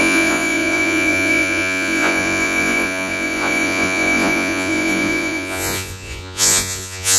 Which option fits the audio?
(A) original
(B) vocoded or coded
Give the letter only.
B